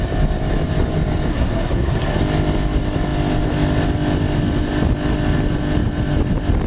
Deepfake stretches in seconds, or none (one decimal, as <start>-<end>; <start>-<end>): 1.3-2.2